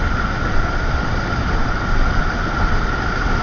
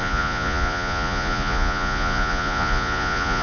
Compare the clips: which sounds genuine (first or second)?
first